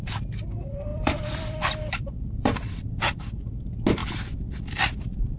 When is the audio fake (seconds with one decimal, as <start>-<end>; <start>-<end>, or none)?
0.9-3.2; 4.0-5.4